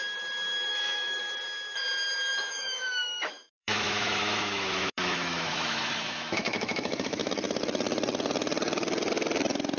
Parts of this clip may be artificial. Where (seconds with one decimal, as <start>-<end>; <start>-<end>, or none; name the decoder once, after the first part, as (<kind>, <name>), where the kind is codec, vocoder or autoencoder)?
0.7-1.2 (autoencoder, DAC-VAE); 2.3-7.3